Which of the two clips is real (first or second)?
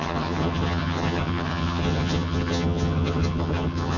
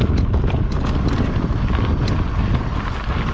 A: second